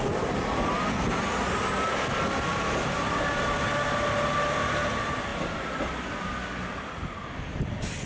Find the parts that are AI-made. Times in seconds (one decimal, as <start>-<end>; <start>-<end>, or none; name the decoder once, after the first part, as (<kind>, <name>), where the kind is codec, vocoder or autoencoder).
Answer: none